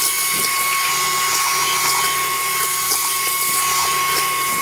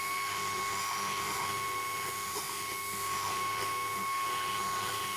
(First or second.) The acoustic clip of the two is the first